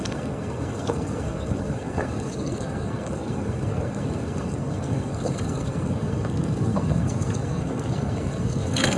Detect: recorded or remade remade